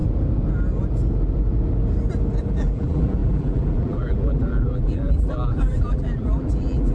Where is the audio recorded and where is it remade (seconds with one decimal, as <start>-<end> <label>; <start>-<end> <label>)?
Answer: 0.0-2.5 recorded; 2.5-6.9 remade